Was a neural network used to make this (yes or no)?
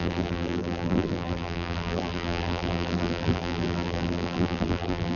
yes